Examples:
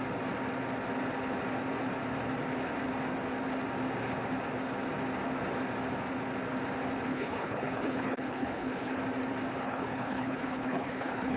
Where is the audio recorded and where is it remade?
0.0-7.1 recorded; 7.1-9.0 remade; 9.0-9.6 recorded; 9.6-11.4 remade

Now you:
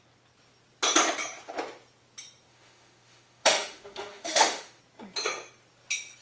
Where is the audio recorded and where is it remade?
0.0-2.5 recorded; 2.5-4.8 remade; 4.8-6.2 recorded

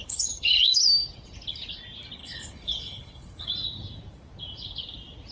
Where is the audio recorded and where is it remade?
0.0-0.8 remade; 0.8-2.2 recorded; 2.2-3.5 remade; 3.5-5.3 recorded